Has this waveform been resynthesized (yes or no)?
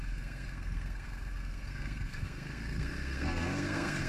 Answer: yes